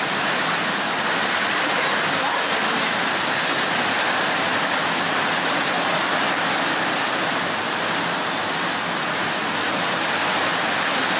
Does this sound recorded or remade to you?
recorded